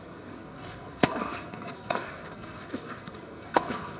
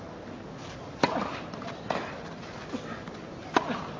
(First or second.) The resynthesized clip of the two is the first